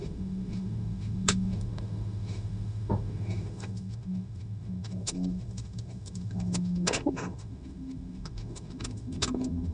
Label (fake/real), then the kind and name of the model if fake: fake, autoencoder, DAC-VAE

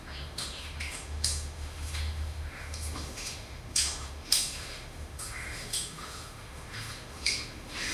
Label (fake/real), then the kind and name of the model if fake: fake, autoencoder, DAC-VAE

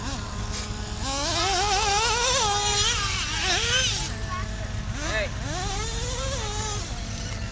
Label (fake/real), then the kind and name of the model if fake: real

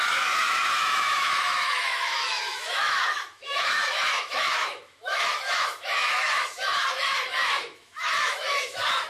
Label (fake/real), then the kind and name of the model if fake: fake, autoencoder, DAC-VAE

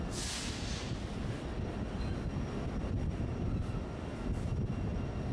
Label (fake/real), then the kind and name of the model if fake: real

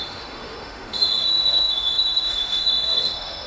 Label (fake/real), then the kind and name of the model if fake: fake, autoencoder, DAC-VAE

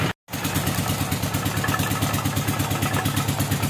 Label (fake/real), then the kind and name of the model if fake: real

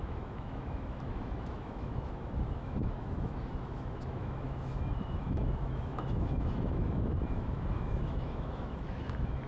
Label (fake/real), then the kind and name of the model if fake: fake, autoencoder, DAC-VAE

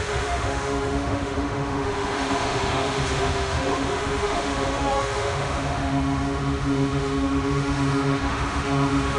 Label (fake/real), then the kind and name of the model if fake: fake, autoencoder, DAC-VAE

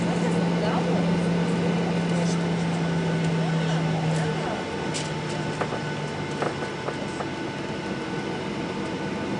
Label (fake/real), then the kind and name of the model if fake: real